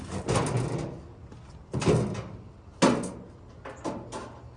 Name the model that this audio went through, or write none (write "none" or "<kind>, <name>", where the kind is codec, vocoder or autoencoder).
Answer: none